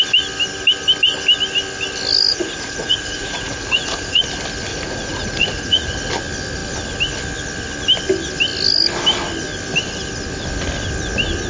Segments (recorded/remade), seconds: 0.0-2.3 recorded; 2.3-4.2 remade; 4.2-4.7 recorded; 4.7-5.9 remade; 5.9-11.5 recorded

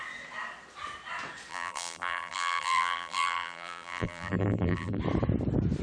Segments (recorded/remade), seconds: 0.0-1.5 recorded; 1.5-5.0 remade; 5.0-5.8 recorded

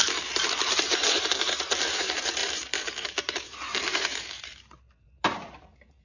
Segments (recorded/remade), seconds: 0.0-6.0 remade

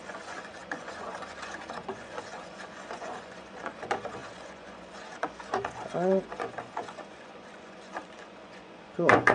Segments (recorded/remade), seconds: 0.0-9.3 remade

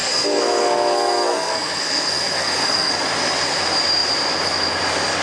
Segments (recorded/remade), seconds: 0.0-2.9 remade; 2.9-5.2 recorded